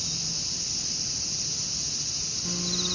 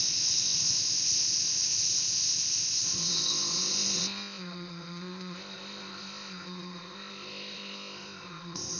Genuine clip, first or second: first